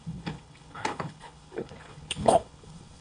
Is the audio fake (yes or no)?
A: yes